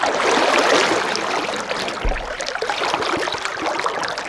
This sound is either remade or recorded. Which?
recorded